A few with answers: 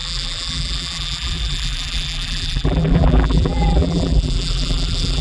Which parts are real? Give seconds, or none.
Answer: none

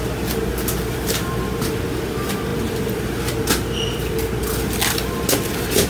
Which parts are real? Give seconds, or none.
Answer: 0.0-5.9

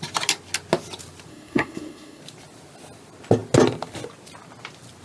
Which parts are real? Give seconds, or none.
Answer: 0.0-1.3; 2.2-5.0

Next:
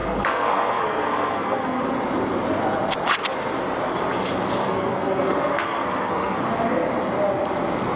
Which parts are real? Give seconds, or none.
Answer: 1.8-4.6; 6.4-8.0

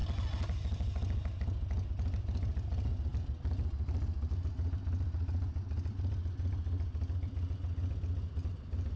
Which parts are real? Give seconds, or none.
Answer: 0.0-9.0

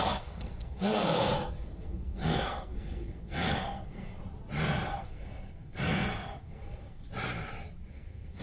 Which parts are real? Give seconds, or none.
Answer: 4.2-4.9; 7.0-7.9

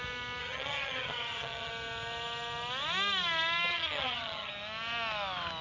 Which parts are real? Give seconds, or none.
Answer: 0.0-0.4; 1.7-3.7; 4.5-5.6